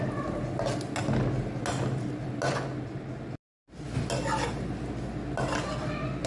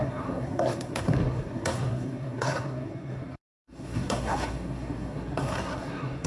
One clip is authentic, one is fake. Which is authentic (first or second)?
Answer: first